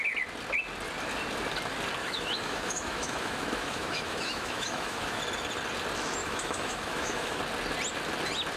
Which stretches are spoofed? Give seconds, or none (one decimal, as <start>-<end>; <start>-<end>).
2.0-5.2; 6.2-7.4